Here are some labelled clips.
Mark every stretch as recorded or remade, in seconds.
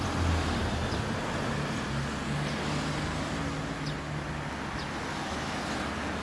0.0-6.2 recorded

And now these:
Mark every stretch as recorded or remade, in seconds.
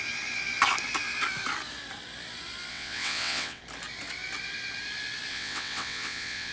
0.0-2.7 recorded; 2.7-3.6 remade; 3.6-5.3 recorded; 5.3-6.5 remade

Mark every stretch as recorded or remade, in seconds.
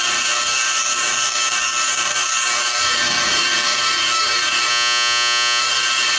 0.0-4.7 remade; 4.7-5.6 recorded; 5.6-6.2 remade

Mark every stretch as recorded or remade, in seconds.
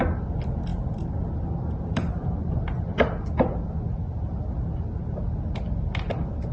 0.0-6.5 recorded